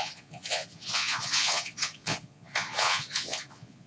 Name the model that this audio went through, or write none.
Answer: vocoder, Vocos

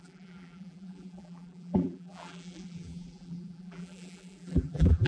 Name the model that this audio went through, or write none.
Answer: vocoder, BigVGAN v2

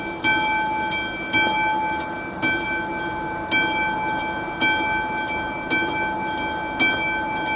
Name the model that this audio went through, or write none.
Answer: none